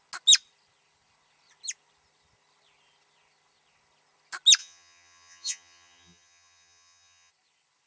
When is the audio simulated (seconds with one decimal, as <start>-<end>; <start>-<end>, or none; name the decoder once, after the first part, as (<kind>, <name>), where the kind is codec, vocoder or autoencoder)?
4.6-7.3 (vocoder, HiFi-GAN)